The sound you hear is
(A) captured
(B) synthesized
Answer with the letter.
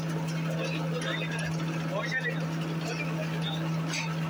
A